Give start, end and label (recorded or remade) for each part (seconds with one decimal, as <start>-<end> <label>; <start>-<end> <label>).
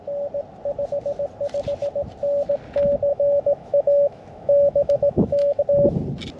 0.0-3.1 recorded; 3.1-5.6 remade; 5.6-6.4 recorded